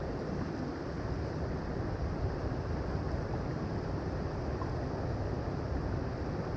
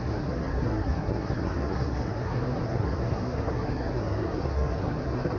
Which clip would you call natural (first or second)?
first